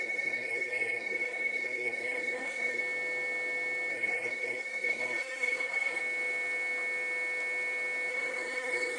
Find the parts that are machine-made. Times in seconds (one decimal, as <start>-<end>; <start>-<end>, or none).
0.0-2.8; 3.9-6.0; 8.1-9.0